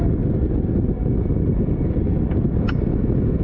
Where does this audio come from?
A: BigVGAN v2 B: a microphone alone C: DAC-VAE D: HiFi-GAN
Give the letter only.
B